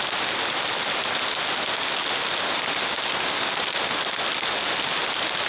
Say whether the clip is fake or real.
real